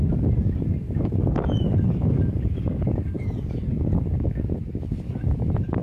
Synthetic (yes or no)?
yes